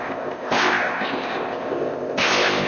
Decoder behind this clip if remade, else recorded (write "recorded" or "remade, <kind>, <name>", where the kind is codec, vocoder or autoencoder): remade, codec, ZipCodec